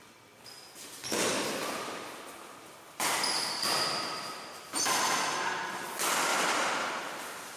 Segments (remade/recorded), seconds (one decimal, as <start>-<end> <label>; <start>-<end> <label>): 0.0-6.3 recorded; 6.3-6.9 remade; 6.9-7.6 recorded